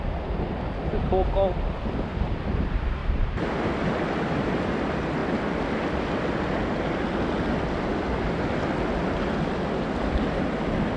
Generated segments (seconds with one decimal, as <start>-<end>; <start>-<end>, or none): 3.0-3.6